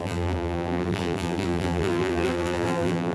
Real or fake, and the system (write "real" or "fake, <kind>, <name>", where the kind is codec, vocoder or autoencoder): fake, vocoder, BigVGAN v2